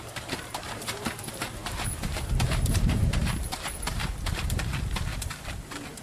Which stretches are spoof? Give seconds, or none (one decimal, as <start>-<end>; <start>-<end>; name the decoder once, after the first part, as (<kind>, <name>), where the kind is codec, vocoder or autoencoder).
0.0-4.7 (vocoder, BigVGAN v2)